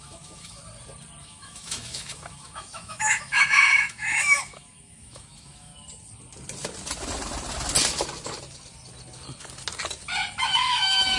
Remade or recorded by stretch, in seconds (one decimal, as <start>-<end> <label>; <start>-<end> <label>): 0.0-0.6 remade; 0.6-1.2 recorded; 1.2-5.7 remade; 5.7-10.4 recorded; 10.4-11.2 remade